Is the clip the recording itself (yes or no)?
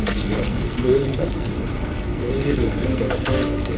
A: no